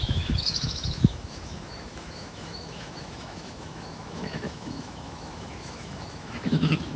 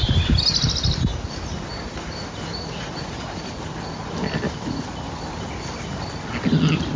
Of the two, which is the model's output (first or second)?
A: first